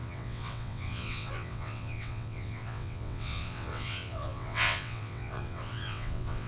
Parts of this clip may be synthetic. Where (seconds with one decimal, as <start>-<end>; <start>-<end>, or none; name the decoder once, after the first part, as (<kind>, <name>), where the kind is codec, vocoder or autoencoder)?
0.0-6.5 (vocoder, WaveNeXt)